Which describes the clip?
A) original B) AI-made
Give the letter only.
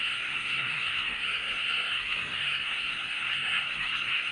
B